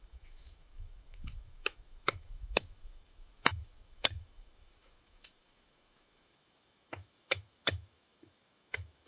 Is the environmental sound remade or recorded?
remade